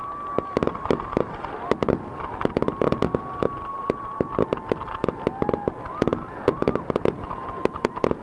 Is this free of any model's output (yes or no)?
yes